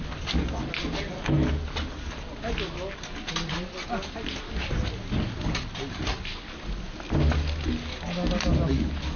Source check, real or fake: real